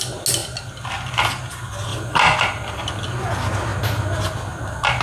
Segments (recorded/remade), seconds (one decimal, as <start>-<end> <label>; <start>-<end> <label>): 0.0-1.9 recorded; 1.9-2.9 remade; 2.9-5.0 recorded